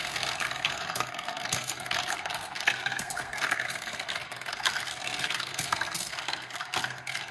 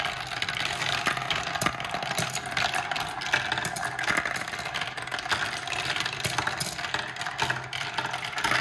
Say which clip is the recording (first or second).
second